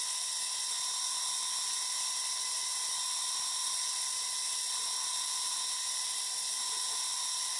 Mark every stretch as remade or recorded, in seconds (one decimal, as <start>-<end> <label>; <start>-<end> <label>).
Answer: 0.0-7.6 recorded

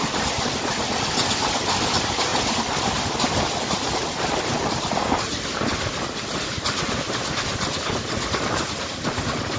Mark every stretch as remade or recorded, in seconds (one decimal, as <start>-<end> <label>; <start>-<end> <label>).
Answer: 0.0-9.6 recorded

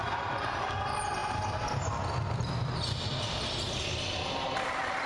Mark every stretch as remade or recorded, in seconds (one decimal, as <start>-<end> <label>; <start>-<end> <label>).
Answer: 0.0-5.1 recorded

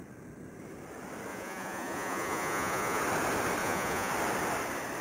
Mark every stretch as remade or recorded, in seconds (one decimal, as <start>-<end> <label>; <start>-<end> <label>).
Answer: 0.0-1.3 recorded; 1.3-3.0 remade; 3.0-3.6 recorded; 3.6-4.1 remade; 4.1-5.0 recorded

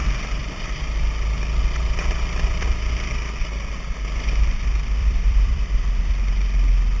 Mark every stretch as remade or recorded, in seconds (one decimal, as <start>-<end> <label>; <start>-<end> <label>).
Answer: 0.0-0.4 recorded; 0.4-1.0 remade; 1.0-5.0 recorded; 5.0-6.1 remade; 6.1-7.0 recorded

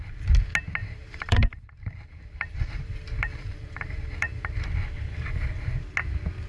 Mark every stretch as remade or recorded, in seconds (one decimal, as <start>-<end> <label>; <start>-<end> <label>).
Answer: 0.0-0.8 recorded; 0.8-4.4 remade; 4.4-6.5 recorded

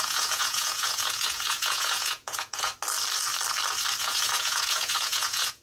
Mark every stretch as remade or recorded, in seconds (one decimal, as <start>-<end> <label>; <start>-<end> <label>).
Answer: 0.0-2.7 remade; 2.7-4.0 recorded; 4.0-5.6 remade